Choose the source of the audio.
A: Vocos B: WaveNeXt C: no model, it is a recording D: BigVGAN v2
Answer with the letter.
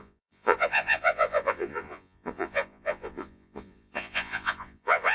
A